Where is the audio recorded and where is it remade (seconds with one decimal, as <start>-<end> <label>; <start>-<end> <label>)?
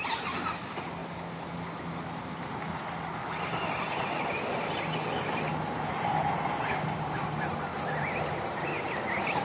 0.0-9.4 recorded